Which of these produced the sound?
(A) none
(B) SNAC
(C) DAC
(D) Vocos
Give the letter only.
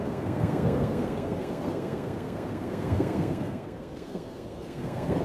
B